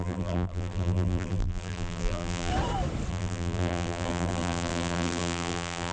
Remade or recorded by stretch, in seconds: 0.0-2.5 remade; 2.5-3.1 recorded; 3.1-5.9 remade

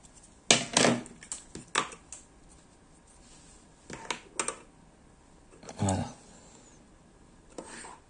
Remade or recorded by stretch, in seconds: 0.0-6.7 recorded; 6.7-8.1 remade

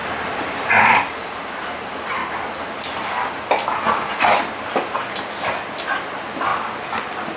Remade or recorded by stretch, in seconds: 0.0-0.7 remade; 0.7-7.4 recorded